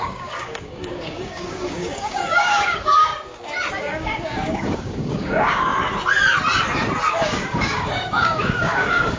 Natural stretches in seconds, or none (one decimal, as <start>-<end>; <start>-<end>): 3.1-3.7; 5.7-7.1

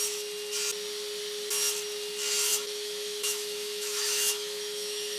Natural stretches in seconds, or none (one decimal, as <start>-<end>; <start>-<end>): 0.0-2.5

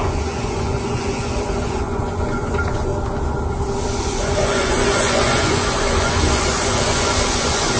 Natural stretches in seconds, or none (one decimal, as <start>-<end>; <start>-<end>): 2.9-4.0

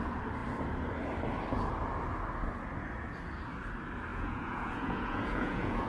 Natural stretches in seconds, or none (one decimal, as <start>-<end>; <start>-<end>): 0.0-4.1

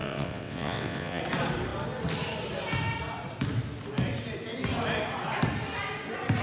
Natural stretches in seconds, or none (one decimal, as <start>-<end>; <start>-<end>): 1.2-6.4